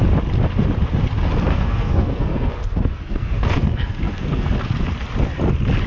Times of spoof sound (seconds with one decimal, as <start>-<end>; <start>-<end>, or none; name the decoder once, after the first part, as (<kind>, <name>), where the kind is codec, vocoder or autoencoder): 1.5-4.5 (codec, SNAC)

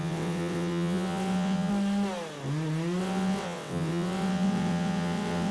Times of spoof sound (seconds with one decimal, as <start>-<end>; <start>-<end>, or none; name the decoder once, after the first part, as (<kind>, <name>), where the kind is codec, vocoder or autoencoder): 0.0-1.7 (vocoder, WaveNeXt); 3.0-5.5